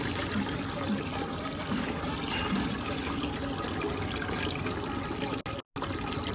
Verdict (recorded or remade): recorded